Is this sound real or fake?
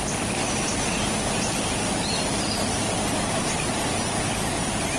real